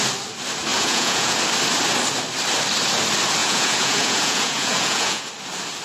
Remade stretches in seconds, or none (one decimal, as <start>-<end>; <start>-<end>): 0.7-1.4; 3.4-5.3